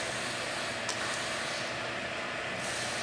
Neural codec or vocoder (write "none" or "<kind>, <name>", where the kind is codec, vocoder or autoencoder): none